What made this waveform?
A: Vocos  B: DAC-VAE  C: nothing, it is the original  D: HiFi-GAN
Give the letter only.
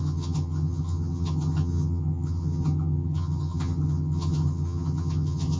D